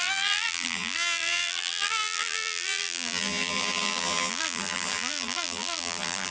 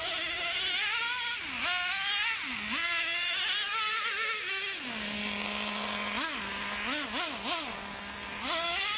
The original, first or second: second